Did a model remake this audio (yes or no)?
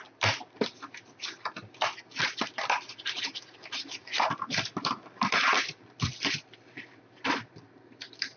yes